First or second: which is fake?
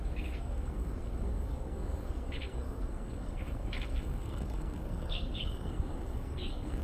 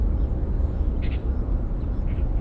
first